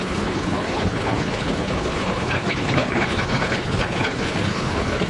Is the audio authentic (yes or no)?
no